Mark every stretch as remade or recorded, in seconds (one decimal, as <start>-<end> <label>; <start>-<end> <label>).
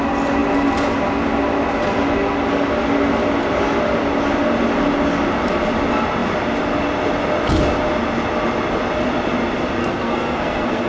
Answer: 0.0-9.8 recorded; 9.8-10.9 remade